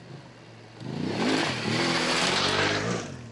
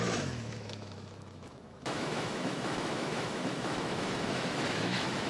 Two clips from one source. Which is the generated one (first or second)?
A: second